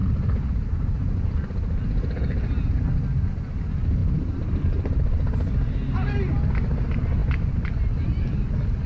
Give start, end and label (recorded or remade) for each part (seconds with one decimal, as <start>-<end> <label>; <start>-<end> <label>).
0.0-1.1 remade; 1.1-8.9 recorded